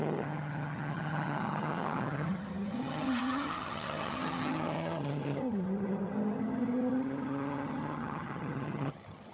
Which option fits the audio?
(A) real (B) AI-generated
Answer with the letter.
B